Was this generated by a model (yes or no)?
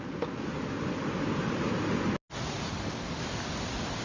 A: no